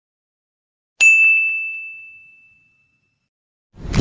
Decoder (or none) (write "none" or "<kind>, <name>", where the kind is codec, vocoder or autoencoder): none